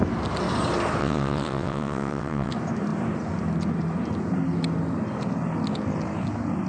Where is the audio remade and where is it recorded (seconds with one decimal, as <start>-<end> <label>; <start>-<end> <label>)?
0.0-1.0 recorded; 1.0-2.5 remade; 2.5-6.7 recorded